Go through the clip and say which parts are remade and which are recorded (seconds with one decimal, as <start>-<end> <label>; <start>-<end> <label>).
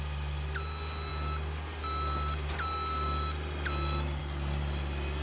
0.0-5.2 recorded